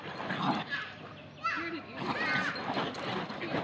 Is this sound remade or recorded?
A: recorded